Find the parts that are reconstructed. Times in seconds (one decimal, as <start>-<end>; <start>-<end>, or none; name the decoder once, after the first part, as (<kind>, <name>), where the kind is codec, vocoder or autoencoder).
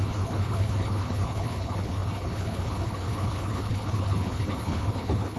0.0-5.4 (codec, HILCodec)